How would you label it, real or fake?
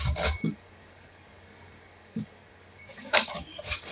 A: fake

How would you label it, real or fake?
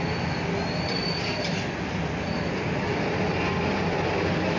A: real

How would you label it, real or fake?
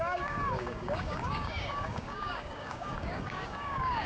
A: fake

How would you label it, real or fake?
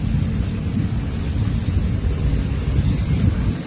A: real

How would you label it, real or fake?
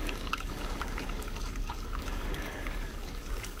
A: fake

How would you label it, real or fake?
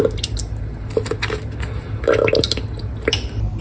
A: real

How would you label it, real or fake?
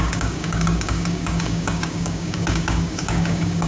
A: fake